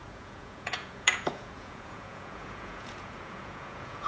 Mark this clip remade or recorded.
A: remade